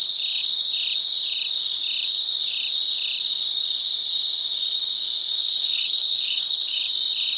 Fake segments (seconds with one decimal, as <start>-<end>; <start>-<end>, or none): 5.4-6.8